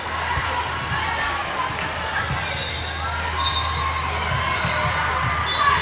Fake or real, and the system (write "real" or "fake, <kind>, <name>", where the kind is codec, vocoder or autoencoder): real